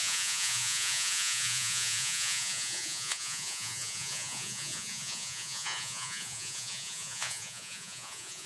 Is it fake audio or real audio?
fake